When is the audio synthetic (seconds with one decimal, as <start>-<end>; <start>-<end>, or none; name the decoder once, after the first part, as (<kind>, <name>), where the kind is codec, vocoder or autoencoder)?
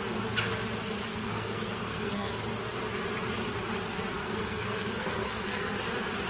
1.1-2.3 (codec, SNAC); 4.2-5.8